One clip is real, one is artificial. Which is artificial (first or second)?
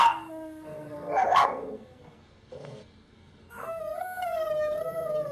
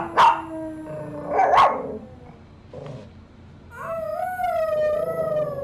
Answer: first